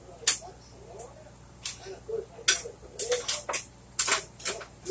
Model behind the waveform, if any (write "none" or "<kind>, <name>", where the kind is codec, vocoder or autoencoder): none